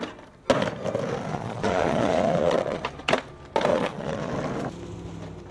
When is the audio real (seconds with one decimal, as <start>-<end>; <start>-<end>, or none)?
0.0-1.3; 2.8-3.7; 4.3-5.5